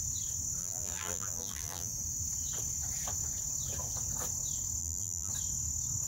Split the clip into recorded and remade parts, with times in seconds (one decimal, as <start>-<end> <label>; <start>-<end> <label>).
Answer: 0.0-0.6 recorded; 0.6-1.9 remade; 1.9-4.8 recorded; 4.8-5.3 remade; 5.3-6.1 recorded